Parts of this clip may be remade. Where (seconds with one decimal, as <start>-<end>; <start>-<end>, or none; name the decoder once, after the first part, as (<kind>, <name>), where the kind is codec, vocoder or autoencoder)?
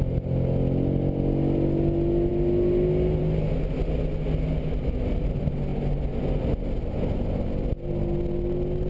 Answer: none